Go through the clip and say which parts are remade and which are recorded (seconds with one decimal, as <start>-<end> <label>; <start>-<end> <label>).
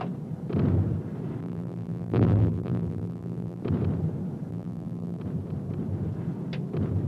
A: 0.0-1.4 recorded; 1.4-3.6 remade; 3.6-4.5 recorded; 4.5-5.2 remade; 5.2-7.1 recorded